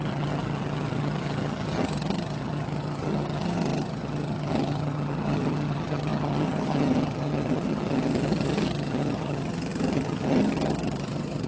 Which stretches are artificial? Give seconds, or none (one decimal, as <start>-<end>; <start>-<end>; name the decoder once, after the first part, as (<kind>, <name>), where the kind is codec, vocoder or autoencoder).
0.0-11.5 (vocoder, HiFi-GAN)